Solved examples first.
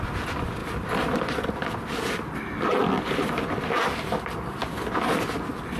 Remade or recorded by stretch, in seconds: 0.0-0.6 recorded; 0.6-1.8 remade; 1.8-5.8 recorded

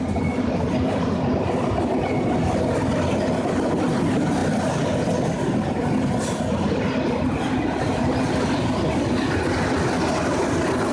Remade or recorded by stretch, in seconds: 0.0-10.9 recorded

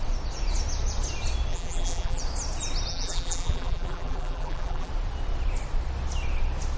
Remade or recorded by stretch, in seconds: 0.0-1.5 recorded; 1.5-2.2 remade; 2.2-2.9 recorded; 2.9-4.9 remade; 4.9-6.8 recorded

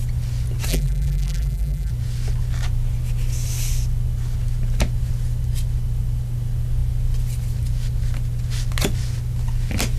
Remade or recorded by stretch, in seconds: 0.0-0.7 recorded; 0.7-1.9 remade; 1.9-10.0 recorded

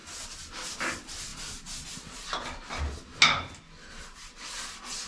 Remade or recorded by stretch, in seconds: 0.0-5.1 recorded

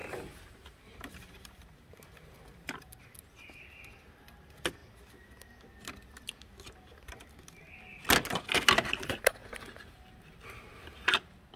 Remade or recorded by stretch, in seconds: 0.0-3.0 remade; 3.0-9.4 recorded; 9.4-11.1 remade; 11.1-11.6 recorded